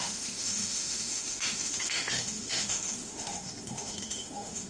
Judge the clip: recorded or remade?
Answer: remade